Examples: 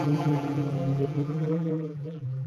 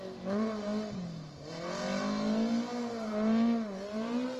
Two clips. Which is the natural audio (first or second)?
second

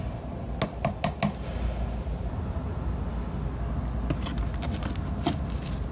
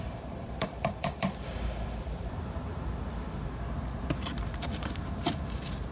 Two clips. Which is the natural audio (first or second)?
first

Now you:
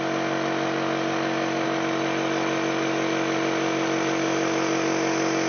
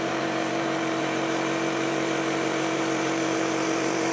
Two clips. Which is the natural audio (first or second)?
first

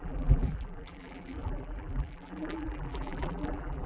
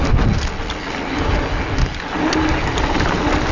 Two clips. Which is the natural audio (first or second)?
second